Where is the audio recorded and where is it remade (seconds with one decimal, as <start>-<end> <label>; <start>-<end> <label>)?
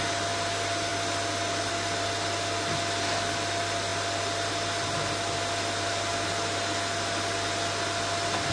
0.0-8.5 recorded